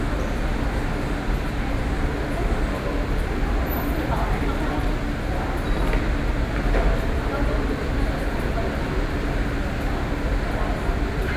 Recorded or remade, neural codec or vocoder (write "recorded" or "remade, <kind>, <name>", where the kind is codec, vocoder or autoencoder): recorded